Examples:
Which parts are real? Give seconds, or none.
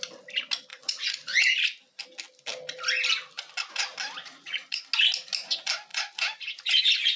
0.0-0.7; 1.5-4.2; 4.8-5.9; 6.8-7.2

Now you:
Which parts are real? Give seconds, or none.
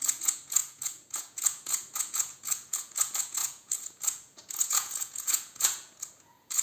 none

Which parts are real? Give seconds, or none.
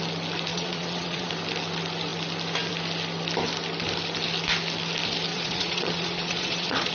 0.0-0.5; 1.3-5.3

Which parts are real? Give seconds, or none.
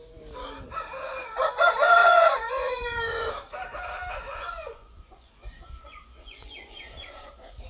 0.0-2.0; 3.3-4.4; 7.3-7.7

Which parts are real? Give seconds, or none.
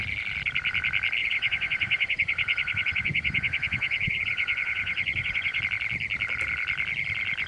0.0-1.2; 5.6-7.5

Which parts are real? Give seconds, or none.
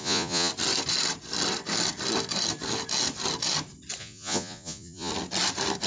0.5-4.0; 5.1-5.9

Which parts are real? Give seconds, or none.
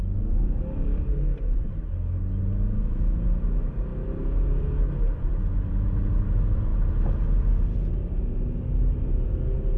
0.0-9.8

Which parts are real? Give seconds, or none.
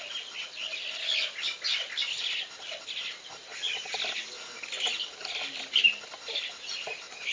0.0-7.3